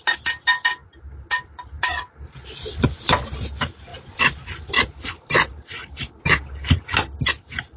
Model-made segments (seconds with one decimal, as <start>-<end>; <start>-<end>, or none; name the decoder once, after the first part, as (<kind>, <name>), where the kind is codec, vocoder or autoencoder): none